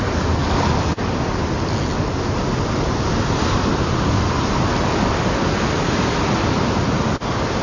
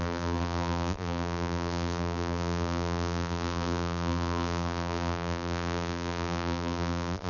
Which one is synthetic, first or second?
second